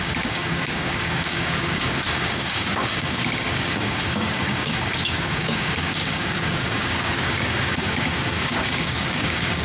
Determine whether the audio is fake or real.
fake